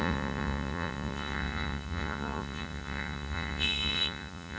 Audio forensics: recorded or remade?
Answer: remade